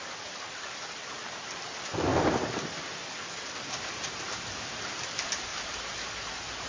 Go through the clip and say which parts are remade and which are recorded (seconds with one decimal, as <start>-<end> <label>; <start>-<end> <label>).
0.0-2.1 remade; 2.1-3.6 recorded; 3.6-5.5 remade; 5.5-6.3 recorded; 6.3-6.7 remade